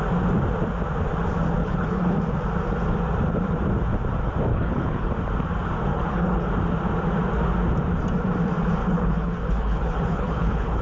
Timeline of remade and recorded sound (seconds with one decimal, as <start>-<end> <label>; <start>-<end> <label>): 0.0-1.6 recorded; 1.6-2.2 remade; 2.2-4.5 recorded; 4.5-5.1 remade; 5.1-5.9 recorded; 5.9-6.5 remade; 6.5-8.8 recorded; 8.8-10.8 remade